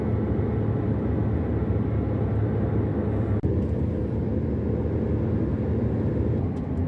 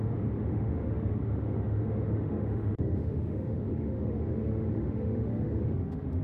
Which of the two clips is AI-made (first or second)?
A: second